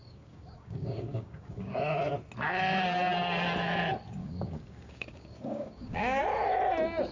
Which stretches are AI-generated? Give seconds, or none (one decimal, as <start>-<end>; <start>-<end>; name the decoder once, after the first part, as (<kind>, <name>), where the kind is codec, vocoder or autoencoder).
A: 0.0-1.8 (codec, DAC); 4.2-6.2